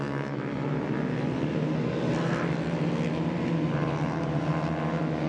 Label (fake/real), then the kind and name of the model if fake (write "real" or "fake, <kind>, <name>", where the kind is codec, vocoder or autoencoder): real